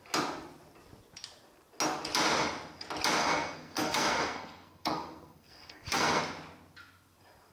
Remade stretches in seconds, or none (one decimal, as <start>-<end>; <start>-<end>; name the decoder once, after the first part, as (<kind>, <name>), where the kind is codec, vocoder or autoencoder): 3.2-6.2 (codec, SNAC)